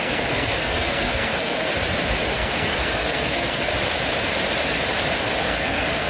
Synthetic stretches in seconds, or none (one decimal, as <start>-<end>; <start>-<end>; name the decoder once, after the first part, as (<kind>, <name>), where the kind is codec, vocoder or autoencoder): 0.0-1.7 (codec, SNAC); 2.3-3.7; 5.4-6.1